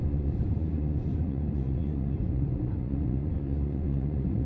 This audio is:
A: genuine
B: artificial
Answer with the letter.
B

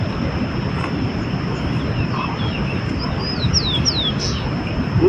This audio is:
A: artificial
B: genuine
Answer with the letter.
B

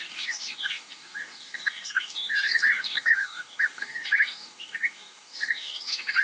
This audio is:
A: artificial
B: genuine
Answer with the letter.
A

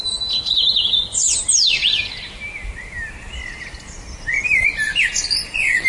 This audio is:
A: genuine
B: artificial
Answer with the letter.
A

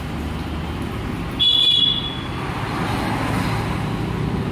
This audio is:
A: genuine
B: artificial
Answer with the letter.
A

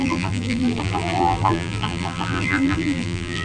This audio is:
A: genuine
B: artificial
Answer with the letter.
B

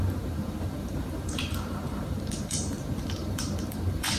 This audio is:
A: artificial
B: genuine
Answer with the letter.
A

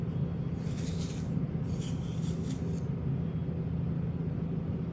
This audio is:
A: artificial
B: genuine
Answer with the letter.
B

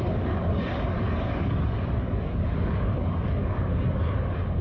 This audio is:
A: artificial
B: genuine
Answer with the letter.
A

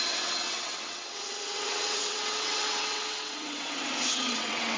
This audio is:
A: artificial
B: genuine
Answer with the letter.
A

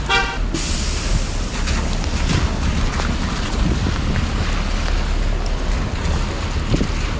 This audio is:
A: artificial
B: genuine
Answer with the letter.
B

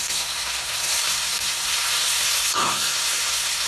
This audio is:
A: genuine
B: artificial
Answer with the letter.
B